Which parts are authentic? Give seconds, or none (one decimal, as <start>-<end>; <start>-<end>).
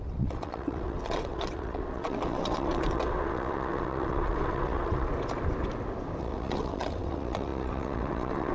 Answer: 5.1-6.2